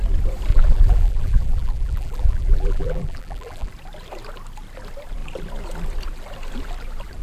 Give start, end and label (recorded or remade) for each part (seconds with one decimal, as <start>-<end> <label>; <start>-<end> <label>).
0.0-0.5 recorded; 0.5-3.7 remade; 3.7-7.2 recorded